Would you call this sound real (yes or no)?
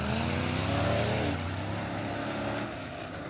yes